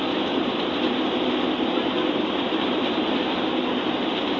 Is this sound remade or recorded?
recorded